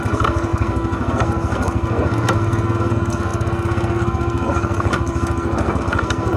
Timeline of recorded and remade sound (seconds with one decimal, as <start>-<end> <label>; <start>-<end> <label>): 0.0-6.4 remade